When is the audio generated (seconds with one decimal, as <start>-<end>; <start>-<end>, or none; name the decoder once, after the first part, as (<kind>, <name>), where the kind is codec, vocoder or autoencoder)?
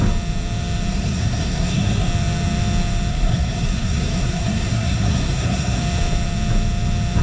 0.9-2.1 (codec, SNAC); 3.1-5.8